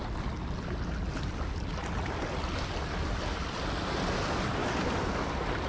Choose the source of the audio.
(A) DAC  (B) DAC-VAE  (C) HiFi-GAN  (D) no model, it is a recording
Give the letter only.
D